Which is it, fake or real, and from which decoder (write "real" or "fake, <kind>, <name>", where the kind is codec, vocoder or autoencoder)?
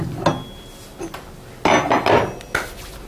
real